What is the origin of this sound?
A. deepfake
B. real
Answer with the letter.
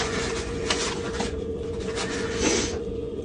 A